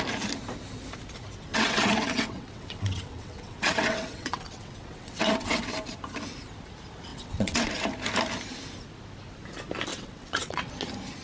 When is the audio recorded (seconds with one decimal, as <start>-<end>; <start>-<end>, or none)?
0.0-1.5; 5.7-7.1; 7.7-9.9; 10.7-11.2